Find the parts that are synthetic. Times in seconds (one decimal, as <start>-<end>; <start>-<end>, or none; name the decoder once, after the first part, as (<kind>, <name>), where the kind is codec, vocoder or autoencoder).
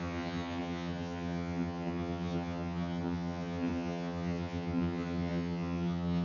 0.0-6.2 (vocoder, HiFi-GAN)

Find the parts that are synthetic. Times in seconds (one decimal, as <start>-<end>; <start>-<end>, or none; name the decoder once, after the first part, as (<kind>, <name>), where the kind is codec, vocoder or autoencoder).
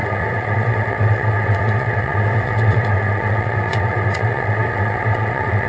0.0-5.7 (vocoder, WaveNeXt)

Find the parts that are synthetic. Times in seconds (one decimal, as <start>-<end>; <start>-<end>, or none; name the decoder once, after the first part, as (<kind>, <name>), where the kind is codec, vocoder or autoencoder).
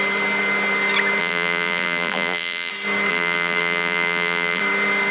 1.2-2.7 (vocoder, BigVGAN v2); 3.1-4.6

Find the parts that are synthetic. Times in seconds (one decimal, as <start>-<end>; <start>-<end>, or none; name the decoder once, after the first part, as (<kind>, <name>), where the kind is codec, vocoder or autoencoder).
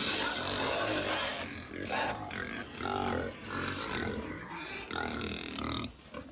none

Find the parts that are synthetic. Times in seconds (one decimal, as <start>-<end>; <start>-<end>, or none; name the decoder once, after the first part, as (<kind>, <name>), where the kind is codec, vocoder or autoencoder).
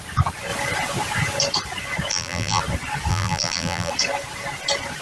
2.1-2.6 (vocoder, BigVGAN v2); 3.1-3.9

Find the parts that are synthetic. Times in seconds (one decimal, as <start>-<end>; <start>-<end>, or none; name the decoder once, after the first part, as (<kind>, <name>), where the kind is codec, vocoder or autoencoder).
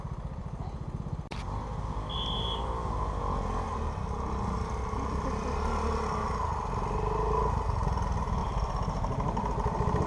8.4-9.5 (vocoder, BigVGAN v2)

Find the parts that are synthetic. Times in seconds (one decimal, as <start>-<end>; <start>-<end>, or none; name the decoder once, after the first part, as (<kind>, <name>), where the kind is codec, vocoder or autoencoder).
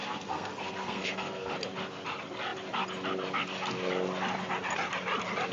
0.0-1.5 (codec, SNAC)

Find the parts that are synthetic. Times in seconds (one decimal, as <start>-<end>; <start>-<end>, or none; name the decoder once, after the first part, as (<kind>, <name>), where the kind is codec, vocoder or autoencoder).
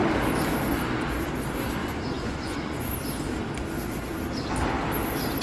1.8-2.9 (vocoder, Vocos)